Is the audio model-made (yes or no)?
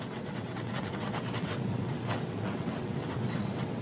yes